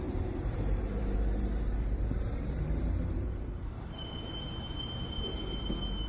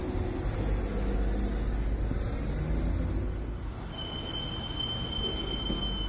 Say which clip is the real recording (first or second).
second